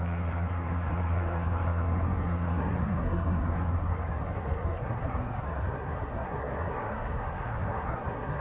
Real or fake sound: fake